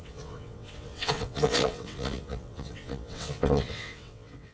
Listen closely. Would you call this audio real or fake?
fake